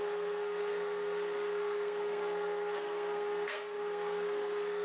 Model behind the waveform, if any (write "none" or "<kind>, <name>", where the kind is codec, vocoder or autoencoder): codec, SNAC